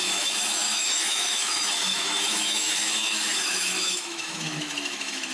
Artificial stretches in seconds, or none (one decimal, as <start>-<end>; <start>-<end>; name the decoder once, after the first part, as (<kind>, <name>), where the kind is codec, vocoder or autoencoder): 0.0-5.3 (autoencoder, DAC-VAE)